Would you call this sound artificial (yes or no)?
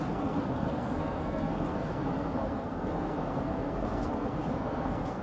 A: yes